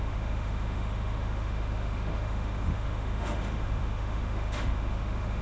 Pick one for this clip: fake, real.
fake